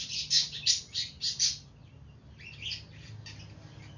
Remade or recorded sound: recorded